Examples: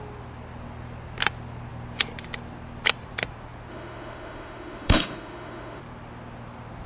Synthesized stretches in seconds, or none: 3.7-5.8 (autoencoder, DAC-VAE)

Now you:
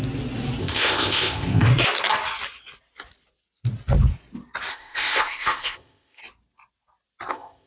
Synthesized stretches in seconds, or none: 0.6-1.7 (codec, ZipCodec); 4.7-6.2; 7.3-7.7

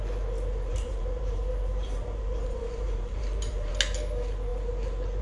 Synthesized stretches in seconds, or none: 0.7-3.7 (vocoder, BigVGAN v2)

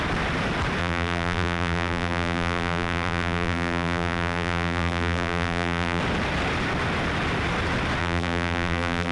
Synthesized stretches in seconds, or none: 0.8-6.0 (vocoder, BigVGAN v2); 8.0-9.1

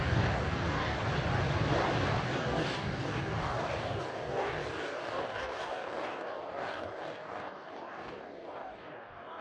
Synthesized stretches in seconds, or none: 0.0-1.0 (codec, DAC); 2.0-9.4

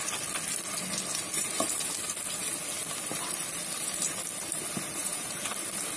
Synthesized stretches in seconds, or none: 5.0-5.5 (vocoder, Vocos)

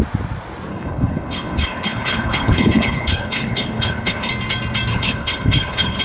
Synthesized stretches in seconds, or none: 0.7-4.3 (codec, HILCodec); 4.9-6.0

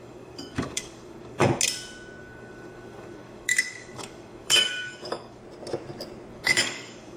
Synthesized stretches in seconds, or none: 0.0-1.4 (codec, DAC); 2.2-5.4; 6.3-7.2